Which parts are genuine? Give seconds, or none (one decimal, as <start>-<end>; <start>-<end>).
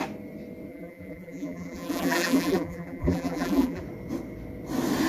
0.0-0.7; 3.8-5.1